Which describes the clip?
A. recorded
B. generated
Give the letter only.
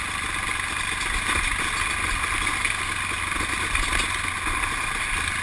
A